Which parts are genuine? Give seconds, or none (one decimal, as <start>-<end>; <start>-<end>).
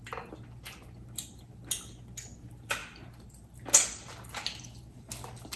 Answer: 0.0-5.6